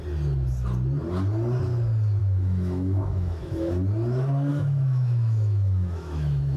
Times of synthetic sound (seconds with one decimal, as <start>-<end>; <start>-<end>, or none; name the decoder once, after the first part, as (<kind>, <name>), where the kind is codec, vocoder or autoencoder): 2.2-3.7 (autoencoder, DAC-VAE); 4.5-6.6

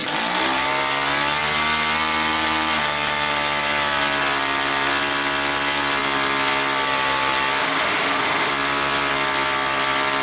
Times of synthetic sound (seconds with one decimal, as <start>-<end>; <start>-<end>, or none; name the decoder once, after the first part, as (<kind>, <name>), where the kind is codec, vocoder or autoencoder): 7.6-8.5 (autoencoder, DAC-VAE)